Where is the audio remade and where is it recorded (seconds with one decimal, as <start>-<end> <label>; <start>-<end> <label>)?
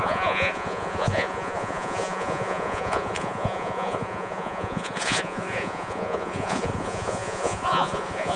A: 0.0-8.4 remade